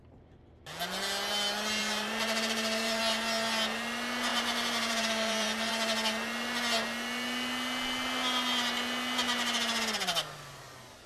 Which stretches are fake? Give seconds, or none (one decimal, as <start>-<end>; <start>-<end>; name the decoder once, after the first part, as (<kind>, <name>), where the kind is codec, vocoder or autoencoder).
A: 1.8-3.0 (vocoder, BigVGAN v2); 4.3-5.7